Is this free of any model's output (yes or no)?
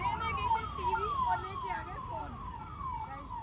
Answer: yes